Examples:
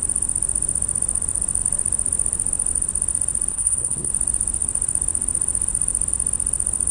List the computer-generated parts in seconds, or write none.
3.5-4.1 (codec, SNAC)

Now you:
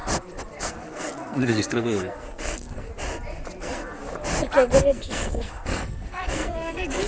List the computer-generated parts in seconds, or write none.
0.6-2.9 (codec, SNAC); 3.6-4.0; 4.8-7.1

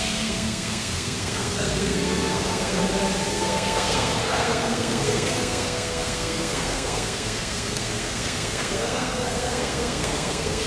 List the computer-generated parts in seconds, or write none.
0.0-2.8 (codec, SNAC); 3.3-10.7

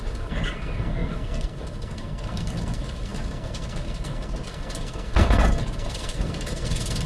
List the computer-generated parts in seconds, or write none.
0.0-7.1 (codec, SNAC)

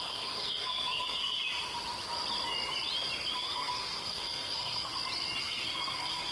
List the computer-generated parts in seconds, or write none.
0.0-1.4 (codec, SNAC); 3.3-4.9; 5.4-6.3

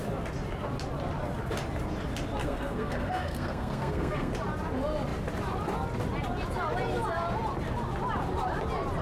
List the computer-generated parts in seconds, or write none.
2.4-4.3 (codec, SNAC)